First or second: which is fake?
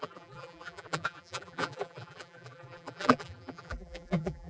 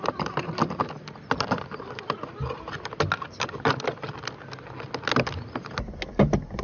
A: first